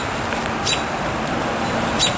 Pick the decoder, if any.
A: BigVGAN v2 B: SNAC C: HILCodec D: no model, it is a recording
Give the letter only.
A